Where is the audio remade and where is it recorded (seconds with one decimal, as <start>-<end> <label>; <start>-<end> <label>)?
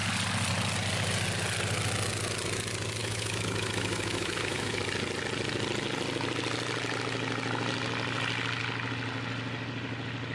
0.0-3.0 recorded; 3.0-4.8 remade; 4.8-10.3 recorded